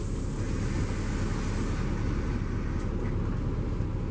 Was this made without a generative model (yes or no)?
yes